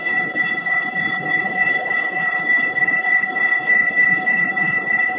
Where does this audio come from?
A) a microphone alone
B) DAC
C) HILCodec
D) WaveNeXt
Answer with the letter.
C